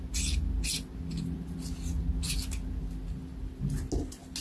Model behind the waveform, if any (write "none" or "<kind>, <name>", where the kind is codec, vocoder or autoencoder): none